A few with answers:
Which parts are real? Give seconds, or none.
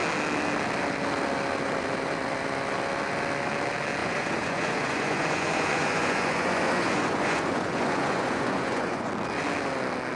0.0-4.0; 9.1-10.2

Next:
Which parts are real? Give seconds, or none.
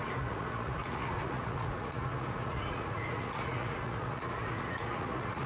none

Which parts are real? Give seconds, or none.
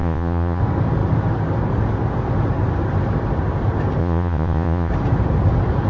0.6-4.0; 4.9-5.9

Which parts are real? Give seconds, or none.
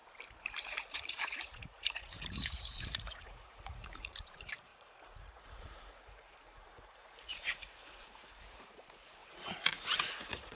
0.0-0.6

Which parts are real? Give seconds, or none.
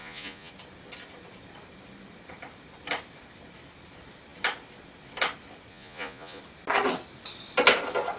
0.5-5.7; 6.4-8.2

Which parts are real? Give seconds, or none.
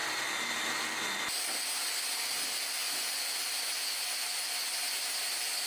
0.0-5.7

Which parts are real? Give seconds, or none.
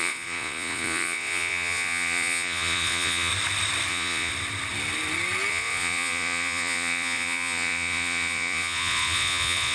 3.3-3.9; 4.3-5.5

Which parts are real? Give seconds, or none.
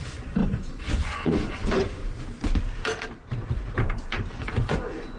2.0-4.3